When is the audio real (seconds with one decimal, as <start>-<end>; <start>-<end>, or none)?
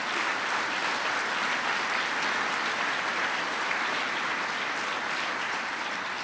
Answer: 0.8-3.1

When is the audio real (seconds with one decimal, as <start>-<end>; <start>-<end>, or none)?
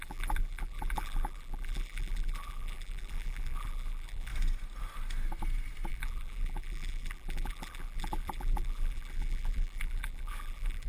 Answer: 4.3-5.9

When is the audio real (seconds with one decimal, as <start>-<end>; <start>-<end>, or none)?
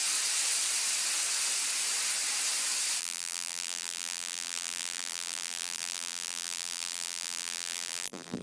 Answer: 0.0-3.0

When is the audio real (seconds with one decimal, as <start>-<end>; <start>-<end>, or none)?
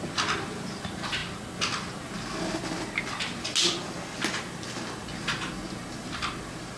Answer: 0.0-6.8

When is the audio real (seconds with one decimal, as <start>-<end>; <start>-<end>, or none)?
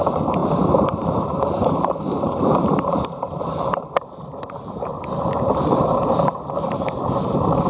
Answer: none